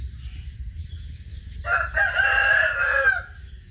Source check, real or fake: real